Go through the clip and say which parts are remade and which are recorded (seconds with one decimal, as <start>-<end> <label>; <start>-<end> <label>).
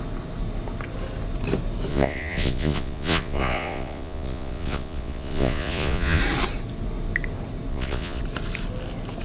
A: 0.0-1.9 recorded; 1.9-6.2 remade; 6.2-7.7 recorded; 7.7-8.2 remade; 8.2-9.2 recorded